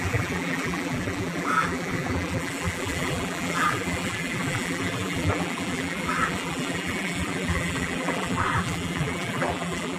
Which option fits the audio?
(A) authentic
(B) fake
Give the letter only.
B